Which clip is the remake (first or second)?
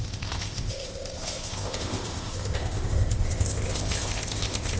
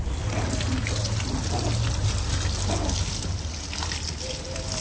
first